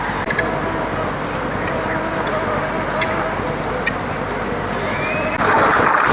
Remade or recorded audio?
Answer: recorded